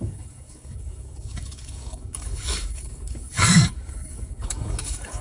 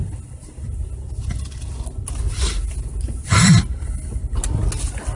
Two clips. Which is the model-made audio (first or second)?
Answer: first